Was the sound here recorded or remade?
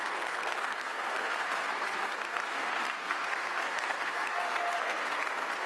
remade